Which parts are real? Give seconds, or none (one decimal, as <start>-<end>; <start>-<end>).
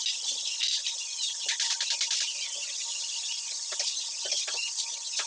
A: 0.0-5.3